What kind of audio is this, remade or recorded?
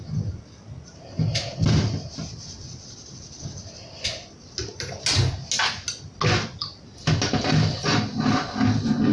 recorded